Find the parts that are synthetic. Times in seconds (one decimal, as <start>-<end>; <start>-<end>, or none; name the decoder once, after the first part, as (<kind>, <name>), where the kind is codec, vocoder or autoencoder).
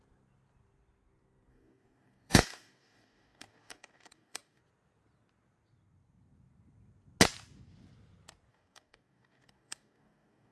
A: 1.5-4.6 (codec, DAC); 8.5-10.5